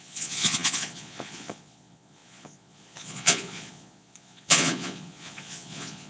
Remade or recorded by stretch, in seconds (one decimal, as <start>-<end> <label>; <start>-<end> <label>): 0.0-6.1 remade